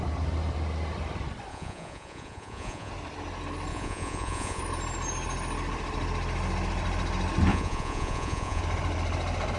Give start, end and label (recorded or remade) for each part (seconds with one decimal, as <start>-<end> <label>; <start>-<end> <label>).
0.0-1.5 recorded; 1.5-2.9 remade; 2.9-3.7 recorded; 3.7-4.6 remade; 4.6-7.5 recorded; 7.5-8.6 remade; 8.6-9.6 recorded